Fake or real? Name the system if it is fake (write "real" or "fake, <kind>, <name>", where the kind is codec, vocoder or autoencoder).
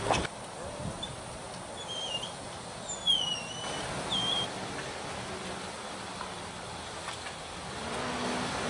real